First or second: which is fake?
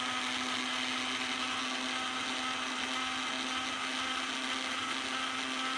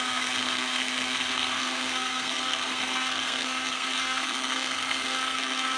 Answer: second